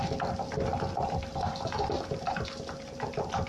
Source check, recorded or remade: recorded